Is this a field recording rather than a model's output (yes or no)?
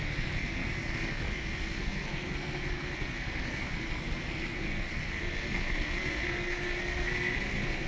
no